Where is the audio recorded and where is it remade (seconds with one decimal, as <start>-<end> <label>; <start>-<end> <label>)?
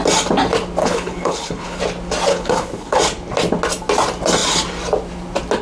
0.0-0.8 recorded; 0.8-1.8 remade; 1.8-2.3 recorded; 2.3-3.0 remade; 3.0-5.6 recorded